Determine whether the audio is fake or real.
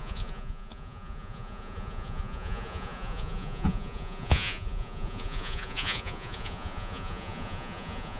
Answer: fake